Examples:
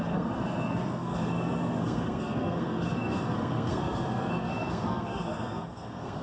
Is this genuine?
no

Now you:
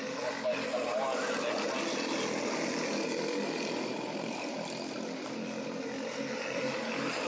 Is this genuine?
yes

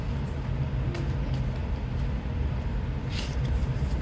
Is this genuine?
yes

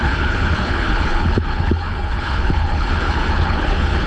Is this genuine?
no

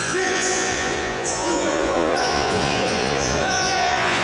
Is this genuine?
no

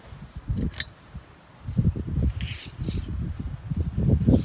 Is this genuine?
yes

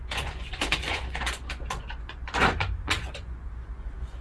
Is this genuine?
no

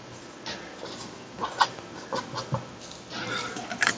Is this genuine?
yes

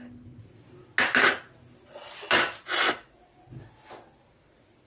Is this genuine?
yes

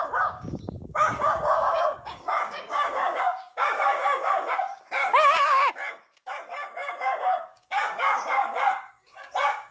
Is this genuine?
no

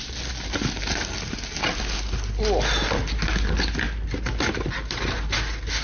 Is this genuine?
yes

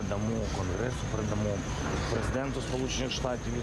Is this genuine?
yes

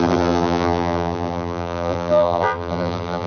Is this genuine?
no